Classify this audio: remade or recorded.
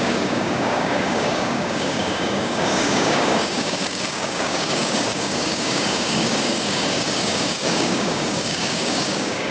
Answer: remade